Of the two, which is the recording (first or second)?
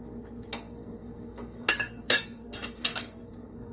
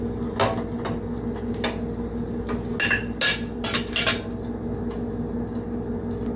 second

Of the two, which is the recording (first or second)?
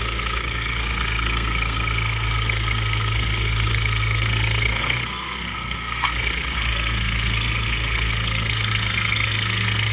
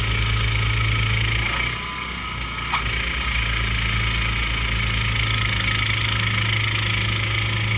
second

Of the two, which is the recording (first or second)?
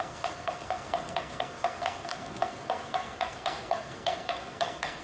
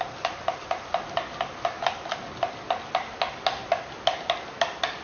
second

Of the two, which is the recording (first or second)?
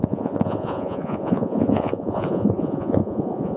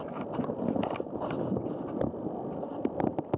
second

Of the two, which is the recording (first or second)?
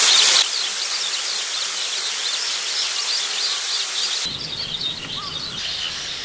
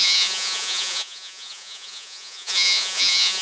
first